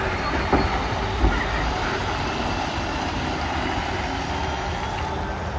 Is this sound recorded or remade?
recorded